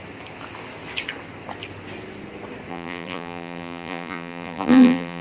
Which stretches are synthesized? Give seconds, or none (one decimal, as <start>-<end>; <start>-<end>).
2.7-5.2